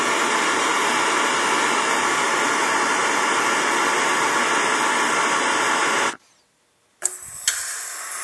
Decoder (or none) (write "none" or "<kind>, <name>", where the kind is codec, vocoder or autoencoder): none